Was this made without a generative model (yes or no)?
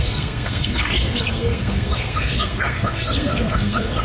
no